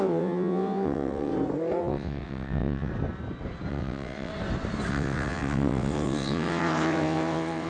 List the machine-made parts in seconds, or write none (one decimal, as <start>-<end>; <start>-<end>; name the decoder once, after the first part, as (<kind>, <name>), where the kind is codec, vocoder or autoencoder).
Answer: 0.0-1.3 (vocoder, WaveNeXt); 1.8-2.9; 3.7-4.3; 4.9-7.7